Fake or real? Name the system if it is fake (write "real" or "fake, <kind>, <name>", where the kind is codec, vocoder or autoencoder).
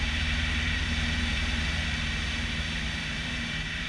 fake, vocoder, BigVGAN v2